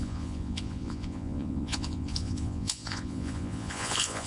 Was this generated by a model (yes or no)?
yes